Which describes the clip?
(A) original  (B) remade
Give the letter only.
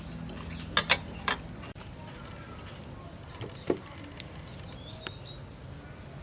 A